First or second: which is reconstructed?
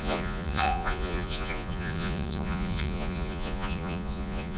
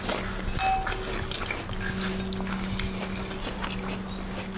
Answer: first